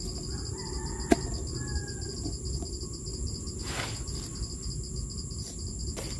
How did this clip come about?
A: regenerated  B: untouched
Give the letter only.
B